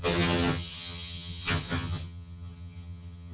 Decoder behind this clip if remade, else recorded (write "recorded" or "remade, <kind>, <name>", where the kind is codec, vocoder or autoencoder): remade, vocoder, HiFi-GAN